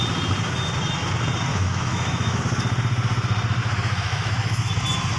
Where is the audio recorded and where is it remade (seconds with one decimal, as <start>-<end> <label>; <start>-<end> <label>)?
0.0-1.5 recorded; 1.5-2.4 remade; 2.4-3.6 recorded; 3.6-4.7 remade; 4.7-5.2 recorded